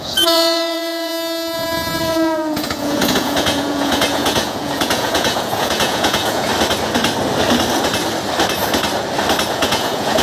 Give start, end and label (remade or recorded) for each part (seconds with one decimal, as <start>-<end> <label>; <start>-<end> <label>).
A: 0.0-1.1 remade; 1.1-2.0 recorded; 2.0-6.5 remade; 6.5-9.5 recorded; 9.5-10.2 remade